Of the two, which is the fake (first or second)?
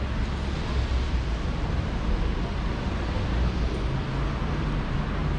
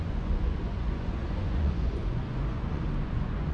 second